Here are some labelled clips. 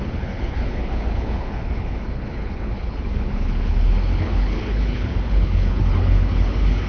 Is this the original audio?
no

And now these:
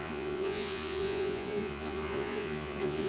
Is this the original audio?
no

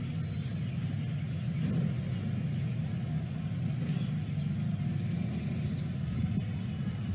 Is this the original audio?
yes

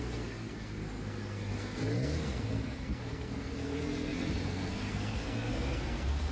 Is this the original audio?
no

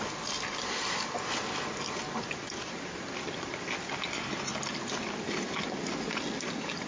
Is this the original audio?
yes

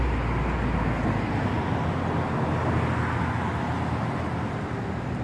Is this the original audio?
yes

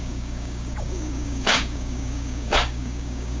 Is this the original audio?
no